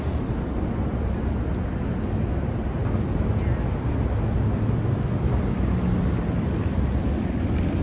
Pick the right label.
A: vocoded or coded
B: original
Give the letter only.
B